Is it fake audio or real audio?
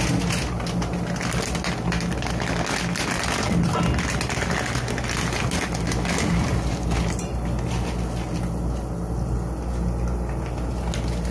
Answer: real